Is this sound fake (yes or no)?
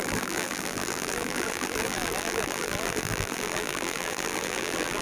yes